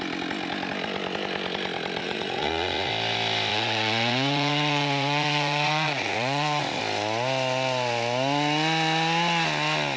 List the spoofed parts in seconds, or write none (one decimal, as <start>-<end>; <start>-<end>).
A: 2.0-2.9; 3.5-6.8